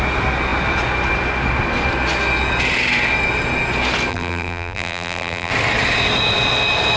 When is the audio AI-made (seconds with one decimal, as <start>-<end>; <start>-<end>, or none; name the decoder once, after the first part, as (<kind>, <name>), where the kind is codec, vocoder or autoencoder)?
4.1-5.5 (vocoder, BigVGAN v2)